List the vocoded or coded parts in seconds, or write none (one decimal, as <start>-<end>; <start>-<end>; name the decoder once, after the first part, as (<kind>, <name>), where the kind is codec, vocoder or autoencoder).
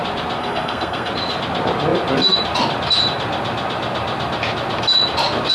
0.4-1.1 (codec, SNAC)